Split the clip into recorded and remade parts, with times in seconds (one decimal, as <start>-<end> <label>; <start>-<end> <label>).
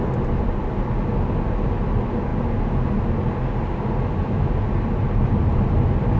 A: 0.0-5.0 recorded; 5.0-5.5 remade; 5.5-6.2 recorded